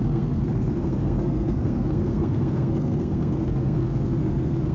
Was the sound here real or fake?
fake